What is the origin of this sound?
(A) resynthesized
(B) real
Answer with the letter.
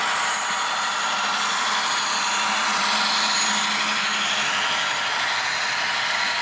B